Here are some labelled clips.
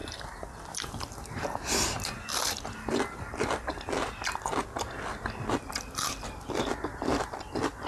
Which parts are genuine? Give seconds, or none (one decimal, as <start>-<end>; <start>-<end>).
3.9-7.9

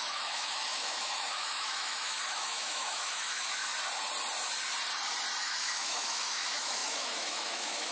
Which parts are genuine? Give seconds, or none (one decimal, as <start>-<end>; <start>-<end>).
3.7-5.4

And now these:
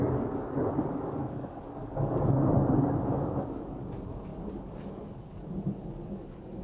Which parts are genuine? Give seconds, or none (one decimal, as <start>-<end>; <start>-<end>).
none